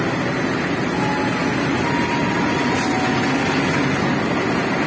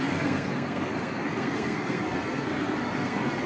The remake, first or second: second